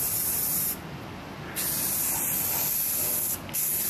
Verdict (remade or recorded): recorded